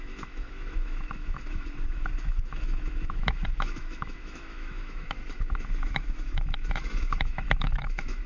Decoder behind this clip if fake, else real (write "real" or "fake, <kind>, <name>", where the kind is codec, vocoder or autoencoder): fake, autoencoder, DAC-VAE